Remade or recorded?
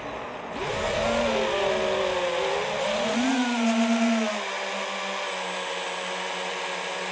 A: recorded